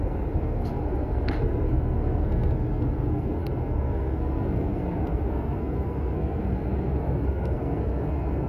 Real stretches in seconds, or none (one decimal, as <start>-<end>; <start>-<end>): none